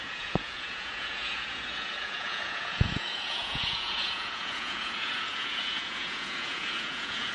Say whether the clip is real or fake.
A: fake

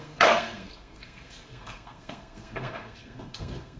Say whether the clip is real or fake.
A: fake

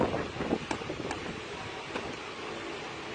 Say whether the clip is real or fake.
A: real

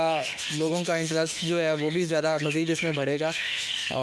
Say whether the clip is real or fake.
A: fake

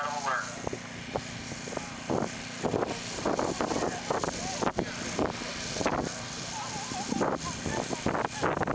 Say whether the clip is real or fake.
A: real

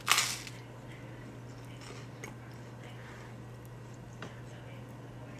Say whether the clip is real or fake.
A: real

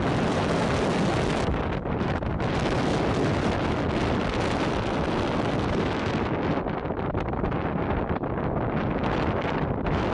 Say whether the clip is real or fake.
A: real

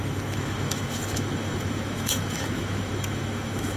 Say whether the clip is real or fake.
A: fake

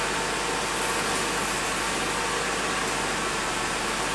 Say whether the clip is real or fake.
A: real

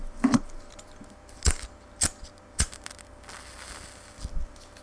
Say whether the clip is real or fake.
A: real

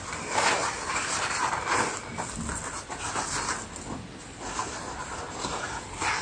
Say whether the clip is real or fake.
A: real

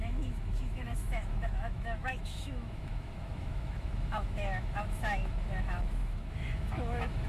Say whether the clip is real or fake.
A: fake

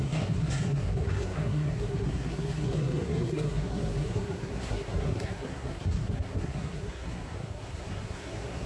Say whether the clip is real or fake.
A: fake